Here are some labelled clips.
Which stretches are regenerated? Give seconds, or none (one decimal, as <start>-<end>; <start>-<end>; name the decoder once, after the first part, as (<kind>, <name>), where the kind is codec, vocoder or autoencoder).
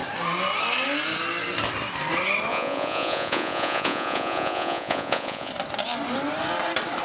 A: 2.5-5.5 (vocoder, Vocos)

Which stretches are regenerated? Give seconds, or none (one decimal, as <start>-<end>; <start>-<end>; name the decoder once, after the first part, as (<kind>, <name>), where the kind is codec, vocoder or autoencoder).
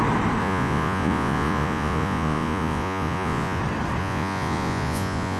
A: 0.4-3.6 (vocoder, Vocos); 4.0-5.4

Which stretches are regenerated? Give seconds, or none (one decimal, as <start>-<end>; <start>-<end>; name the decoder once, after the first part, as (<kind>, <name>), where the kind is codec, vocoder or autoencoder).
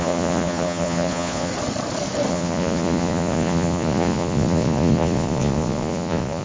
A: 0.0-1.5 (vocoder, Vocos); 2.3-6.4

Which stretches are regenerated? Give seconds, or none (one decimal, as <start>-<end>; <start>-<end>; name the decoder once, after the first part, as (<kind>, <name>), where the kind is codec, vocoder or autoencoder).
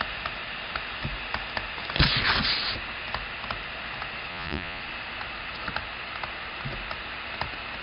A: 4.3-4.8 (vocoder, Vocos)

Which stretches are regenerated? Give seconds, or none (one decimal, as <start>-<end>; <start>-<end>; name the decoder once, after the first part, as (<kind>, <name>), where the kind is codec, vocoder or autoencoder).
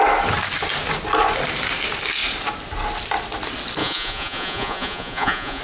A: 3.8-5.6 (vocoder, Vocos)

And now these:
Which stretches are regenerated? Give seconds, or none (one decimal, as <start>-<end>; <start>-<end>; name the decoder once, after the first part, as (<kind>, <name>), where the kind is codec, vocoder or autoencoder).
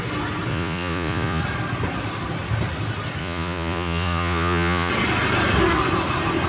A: 0.5-1.4 (vocoder, Vocos); 3.2-4.9